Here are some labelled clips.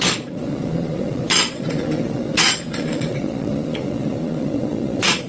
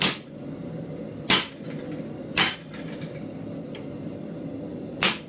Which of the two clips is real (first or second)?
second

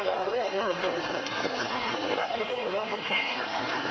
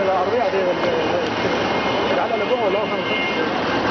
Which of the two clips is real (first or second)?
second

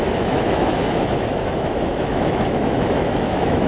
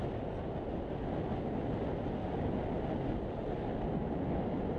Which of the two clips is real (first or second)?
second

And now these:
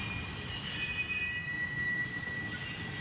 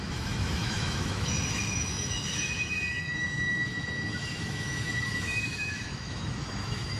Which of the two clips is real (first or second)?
first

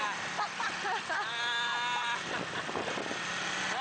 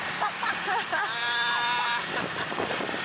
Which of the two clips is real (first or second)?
first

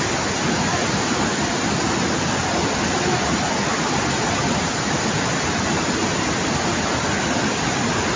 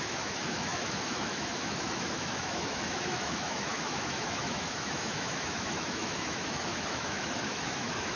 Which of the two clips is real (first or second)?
first